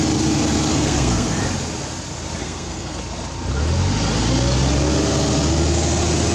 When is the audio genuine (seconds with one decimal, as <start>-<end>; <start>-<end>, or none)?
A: 0.0-0.7; 1.4-2.4; 3.0-6.3